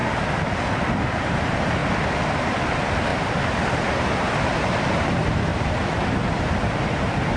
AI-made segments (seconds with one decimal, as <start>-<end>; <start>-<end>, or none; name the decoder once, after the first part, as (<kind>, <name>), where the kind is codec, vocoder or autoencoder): 1.3-1.8 (vocoder, BigVGAN v2); 2.5-3.1; 4.6-7.4